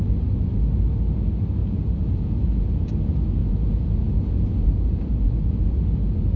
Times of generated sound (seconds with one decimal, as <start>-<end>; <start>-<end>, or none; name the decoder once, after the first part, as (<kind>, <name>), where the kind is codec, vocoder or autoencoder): 1.6-2.9 (vocoder, Vocos); 3.4-6.4